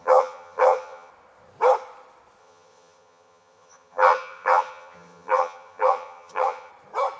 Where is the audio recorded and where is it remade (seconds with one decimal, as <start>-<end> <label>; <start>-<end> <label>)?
0.0-1.1 remade; 1.1-2.4 recorded; 2.4-6.7 remade; 6.7-7.2 recorded